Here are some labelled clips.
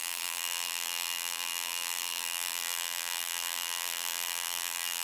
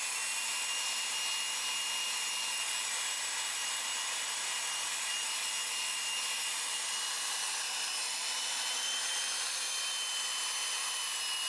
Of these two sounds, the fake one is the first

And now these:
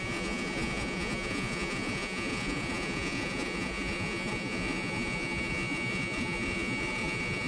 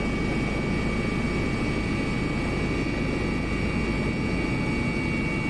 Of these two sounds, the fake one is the first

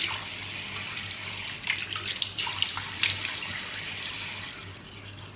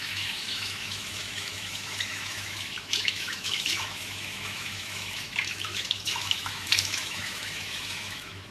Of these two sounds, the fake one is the second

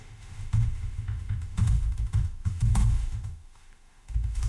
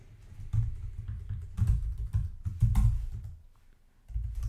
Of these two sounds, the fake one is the first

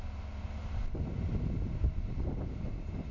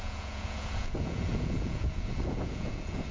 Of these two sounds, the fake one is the second